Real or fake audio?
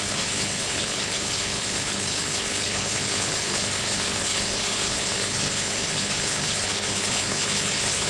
fake